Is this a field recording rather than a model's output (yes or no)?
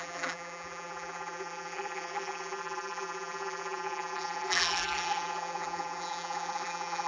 no